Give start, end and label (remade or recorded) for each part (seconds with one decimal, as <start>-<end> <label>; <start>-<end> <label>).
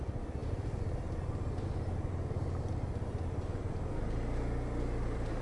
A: 0.0-5.4 recorded